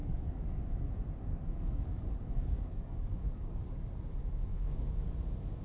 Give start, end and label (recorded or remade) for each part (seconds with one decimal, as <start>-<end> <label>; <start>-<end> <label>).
0.0-0.6 remade; 0.6-1.3 recorded; 1.3-3.6 remade; 3.6-4.5 recorded; 4.5-5.1 remade; 5.1-5.6 recorded